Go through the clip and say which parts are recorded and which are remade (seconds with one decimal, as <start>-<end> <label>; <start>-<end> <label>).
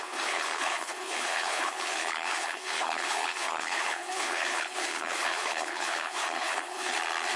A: 0.0-6.9 remade; 6.9-7.4 recorded